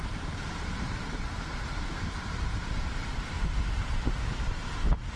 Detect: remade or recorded remade